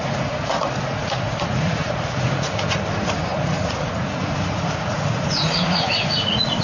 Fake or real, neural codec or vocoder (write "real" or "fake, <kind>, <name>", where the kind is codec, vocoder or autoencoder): fake, vocoder, Vocos